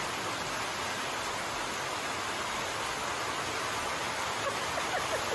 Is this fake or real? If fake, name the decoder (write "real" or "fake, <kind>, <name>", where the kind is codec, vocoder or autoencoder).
real